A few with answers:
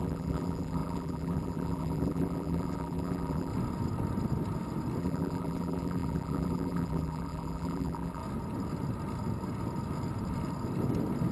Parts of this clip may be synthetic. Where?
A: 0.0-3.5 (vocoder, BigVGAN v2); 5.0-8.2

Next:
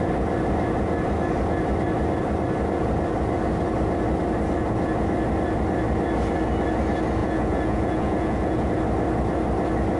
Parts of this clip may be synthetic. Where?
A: 7.2-8.7 (vocoder, Vocos)

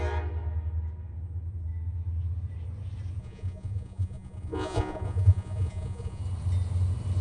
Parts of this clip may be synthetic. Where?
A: 3.2-6.2 (vocoder, Vocos)